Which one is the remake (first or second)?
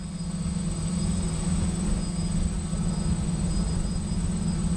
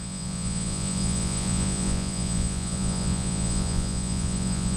second